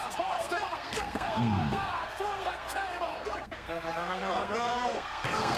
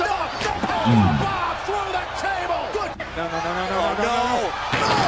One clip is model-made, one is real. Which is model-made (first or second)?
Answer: first